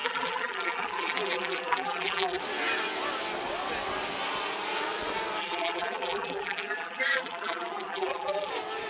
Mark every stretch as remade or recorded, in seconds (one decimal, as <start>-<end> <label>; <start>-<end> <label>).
0.0-2.4 remade; 2.4-5.4 recorded; 5.4-8.5 remade; 8.5-8.9 recorded